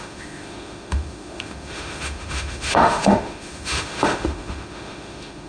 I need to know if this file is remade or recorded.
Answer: remade